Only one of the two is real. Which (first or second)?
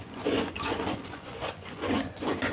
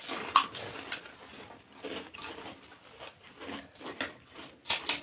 second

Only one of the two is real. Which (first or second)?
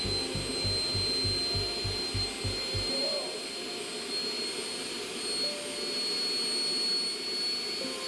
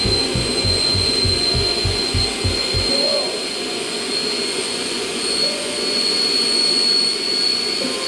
first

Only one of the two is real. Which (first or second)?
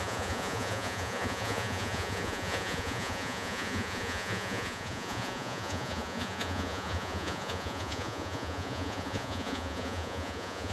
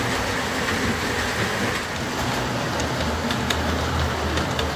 second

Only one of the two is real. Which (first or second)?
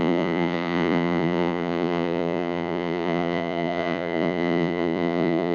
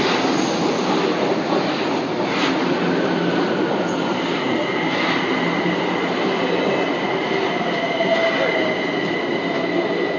second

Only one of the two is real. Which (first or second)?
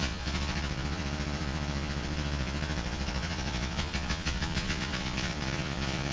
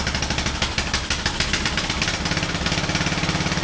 second